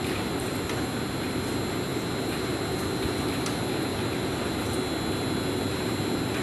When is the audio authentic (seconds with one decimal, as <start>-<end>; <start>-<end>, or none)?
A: 0.0-3.9; 4.7-6.4